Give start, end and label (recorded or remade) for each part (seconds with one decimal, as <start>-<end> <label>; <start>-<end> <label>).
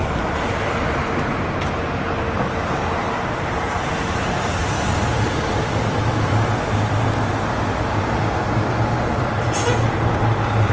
0.0-4.6 recorded; 4.6-9.6 remade; 9.6-10.7 recorded